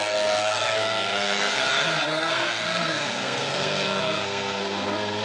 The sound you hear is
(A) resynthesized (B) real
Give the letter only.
A